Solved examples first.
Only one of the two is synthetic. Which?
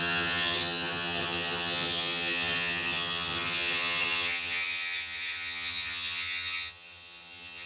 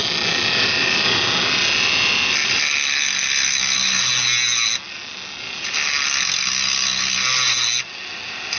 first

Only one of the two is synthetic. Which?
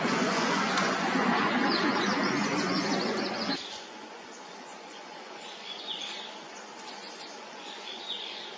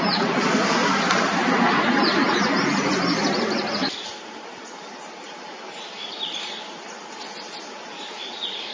first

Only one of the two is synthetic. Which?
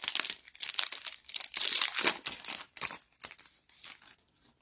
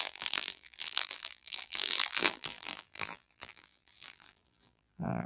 second